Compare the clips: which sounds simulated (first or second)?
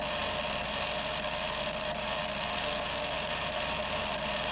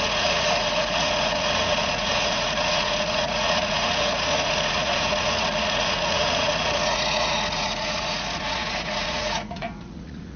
second